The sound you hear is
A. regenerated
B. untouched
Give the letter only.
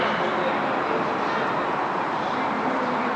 B